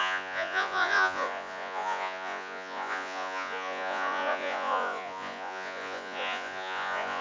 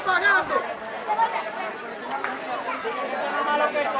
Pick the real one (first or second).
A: second